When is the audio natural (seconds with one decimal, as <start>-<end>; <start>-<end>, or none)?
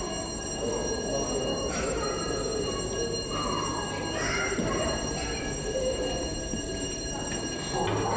0.0-1.5; 2.0-8.2